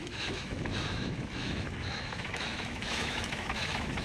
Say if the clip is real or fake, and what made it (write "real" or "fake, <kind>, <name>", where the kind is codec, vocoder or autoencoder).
fake, autoencoder, DAC-VAE